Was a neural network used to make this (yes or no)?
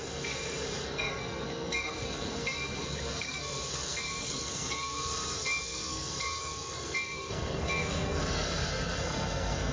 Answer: yes